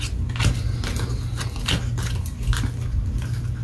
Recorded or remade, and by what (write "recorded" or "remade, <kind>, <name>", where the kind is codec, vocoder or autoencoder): recorded